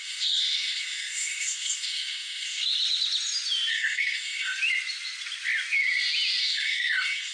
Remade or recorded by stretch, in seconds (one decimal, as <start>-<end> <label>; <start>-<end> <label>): 0.0-2.6 remade; 2.6-3.7 recorded; 3.7-4.6 remade; 4.6-6.4 recorded; 6.4-7.3 remade